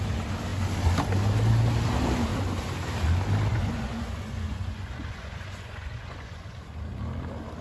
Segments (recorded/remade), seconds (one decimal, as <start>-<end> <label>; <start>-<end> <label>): 0.0-3.5 recorded; 3.5-6.8 remade; 6.8-7.6 recorded